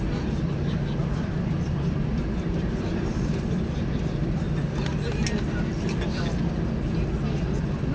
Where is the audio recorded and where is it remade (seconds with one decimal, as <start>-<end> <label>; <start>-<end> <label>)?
0.0-1.0 recorded; 1.0-4.3 remade; 4.3-7.9 recorded